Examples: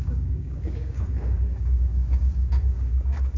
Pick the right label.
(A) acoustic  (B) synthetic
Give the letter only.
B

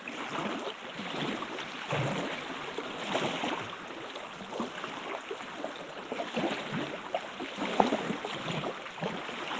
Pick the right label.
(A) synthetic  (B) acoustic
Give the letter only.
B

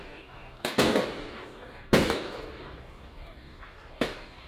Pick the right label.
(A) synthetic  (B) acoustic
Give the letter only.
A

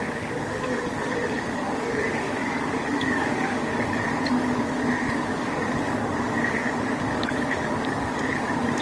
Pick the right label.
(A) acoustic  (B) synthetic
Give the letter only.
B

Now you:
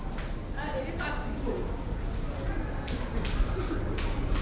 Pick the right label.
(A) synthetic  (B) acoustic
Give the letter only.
B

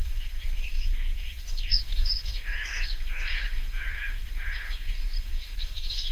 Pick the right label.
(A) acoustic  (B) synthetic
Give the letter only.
B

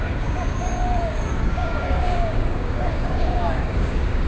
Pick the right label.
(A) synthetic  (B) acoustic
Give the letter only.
A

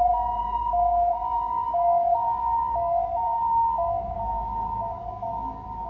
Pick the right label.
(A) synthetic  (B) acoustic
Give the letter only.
A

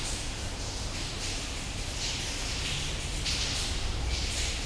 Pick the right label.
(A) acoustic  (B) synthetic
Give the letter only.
A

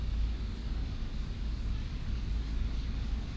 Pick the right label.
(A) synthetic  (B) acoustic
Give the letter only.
A